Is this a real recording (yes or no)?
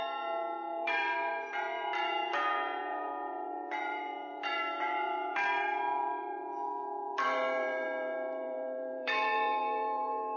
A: no